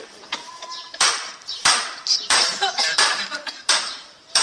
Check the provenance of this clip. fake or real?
fake